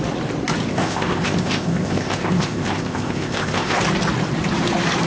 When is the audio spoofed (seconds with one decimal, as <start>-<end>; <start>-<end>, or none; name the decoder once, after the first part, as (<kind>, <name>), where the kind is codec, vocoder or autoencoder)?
0.7-3.8 (codec, ZipCodec)